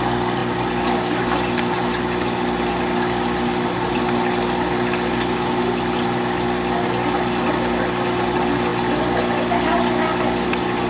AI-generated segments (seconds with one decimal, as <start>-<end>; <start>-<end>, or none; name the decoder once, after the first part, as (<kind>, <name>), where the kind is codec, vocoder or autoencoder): none